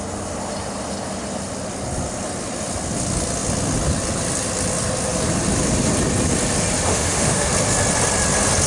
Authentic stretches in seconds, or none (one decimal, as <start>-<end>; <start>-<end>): 0.0-6.9; 7.5-8.7